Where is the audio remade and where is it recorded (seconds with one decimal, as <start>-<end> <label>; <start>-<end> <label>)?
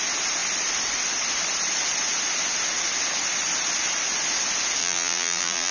0.0-4.8 recorded; 4.8-5.7 remade